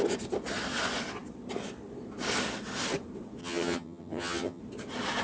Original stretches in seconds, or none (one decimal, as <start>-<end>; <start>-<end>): 0.0-3.4; 4.6-5.2